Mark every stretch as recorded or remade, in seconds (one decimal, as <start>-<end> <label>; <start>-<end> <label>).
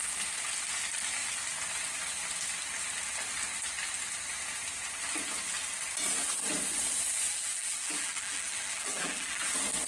0.0-7.3 recorded; 7.3-9.4 remade; 9.4-9.9 recorded